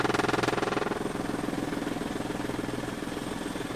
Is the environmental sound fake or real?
real